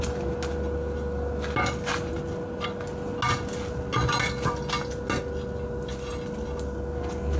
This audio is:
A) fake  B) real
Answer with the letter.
B